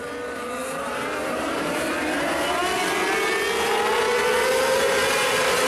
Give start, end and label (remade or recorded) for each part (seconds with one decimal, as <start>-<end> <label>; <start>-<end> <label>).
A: 0.0-0.6 recorded; 0.6-1.9 remade; 1.9-5.7 recorded